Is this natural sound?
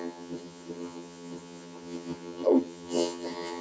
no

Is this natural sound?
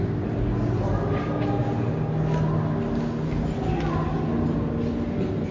yes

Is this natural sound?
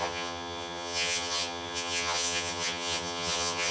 no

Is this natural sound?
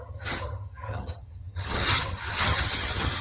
no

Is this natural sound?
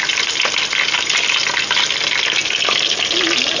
yes